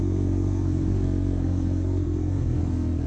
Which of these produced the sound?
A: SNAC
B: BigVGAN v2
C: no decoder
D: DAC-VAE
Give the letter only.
A